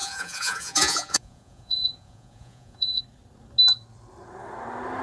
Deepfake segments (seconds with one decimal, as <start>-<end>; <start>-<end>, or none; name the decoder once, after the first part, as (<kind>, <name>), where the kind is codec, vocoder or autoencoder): 0.0-3.0 (vocoder, Vocos)